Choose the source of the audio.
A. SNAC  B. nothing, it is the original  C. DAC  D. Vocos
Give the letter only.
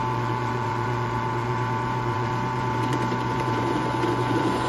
D